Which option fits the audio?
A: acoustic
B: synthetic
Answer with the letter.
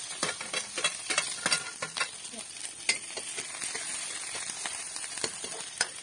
A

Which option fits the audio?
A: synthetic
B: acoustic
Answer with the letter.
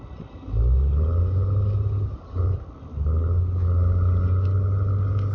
B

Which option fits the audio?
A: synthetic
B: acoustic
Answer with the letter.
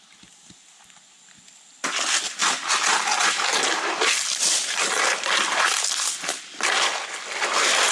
B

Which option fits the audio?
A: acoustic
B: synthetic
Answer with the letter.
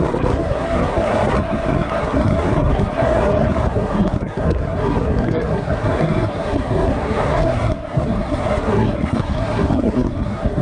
B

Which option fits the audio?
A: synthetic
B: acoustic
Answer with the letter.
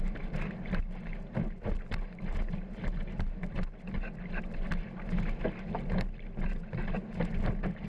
B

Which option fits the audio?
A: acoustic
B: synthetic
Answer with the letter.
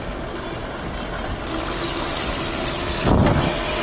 A